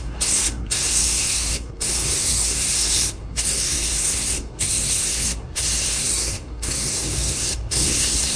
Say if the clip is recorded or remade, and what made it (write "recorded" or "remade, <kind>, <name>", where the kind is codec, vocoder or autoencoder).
remade, codec, SNAC